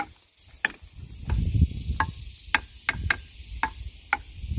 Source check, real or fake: real